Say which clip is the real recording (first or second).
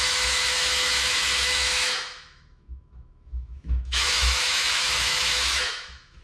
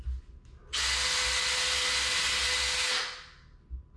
second